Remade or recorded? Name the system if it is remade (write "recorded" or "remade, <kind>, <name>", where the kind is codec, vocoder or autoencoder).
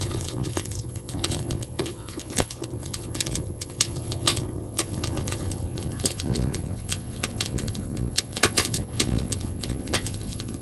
remade, vocoder, Vocos